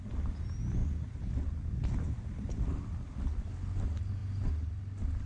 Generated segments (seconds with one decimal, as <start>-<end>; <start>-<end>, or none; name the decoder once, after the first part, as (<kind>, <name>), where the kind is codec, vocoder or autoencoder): none